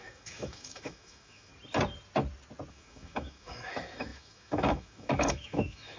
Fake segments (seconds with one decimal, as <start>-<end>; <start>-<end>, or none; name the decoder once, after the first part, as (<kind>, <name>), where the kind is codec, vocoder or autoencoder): 0.0-1.5 (autoencoder, DAC-VAE); 2.7-6.0